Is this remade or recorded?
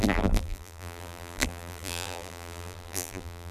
remade